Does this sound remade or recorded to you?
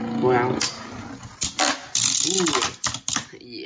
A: recorded